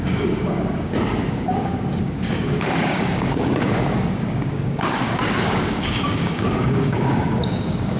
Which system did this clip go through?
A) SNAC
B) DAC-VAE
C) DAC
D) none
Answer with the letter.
C